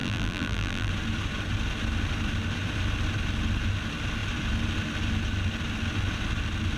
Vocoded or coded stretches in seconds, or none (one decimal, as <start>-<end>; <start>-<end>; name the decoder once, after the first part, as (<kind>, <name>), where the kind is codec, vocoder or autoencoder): 0.0-0.9 (vocoder, BigVGAN v2)